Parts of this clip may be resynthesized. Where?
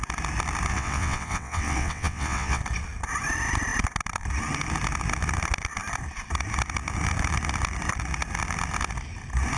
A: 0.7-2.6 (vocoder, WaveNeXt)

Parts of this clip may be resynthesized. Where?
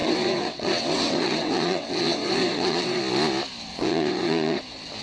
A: 0.0-3.0 (vocoder, WaveNeXt); 3.7-4.6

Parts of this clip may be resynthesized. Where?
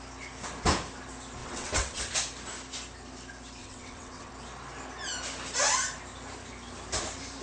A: 1.4-2.0 (vocoder, WaveNeXt); 3.6-4.3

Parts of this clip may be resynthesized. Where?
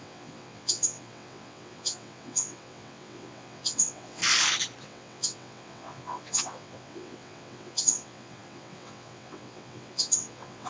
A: 0.0-4.2 (vocoder, WaveNeXt); 4.8-10.7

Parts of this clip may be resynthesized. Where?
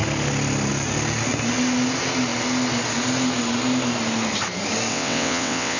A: 4.9-5.8 (vocoder, WaveNeXt)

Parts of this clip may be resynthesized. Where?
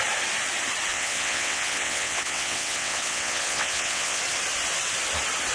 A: 0.9-4.2 (vocoder, WaveNeXt)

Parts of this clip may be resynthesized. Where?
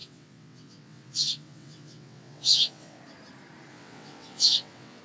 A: 0.0-3.0 (vocoder, WaveNeXt); 3.7-5.0